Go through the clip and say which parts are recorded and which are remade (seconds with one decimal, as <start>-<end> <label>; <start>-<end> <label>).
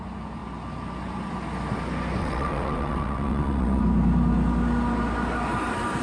0.0-2.2 recorded; 2.2-3.8 remade; 3.8-6.0 recorded